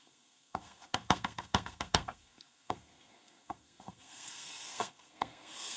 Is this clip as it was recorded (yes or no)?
no